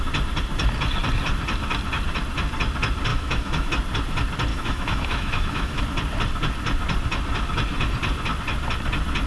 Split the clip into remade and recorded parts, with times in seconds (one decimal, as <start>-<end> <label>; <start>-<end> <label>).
0.0-3.1 recorded; 3.1-3.7 remade; 3.7-4.5 recorded; 4.5-5.8 remade; 5.8-9.3 recorded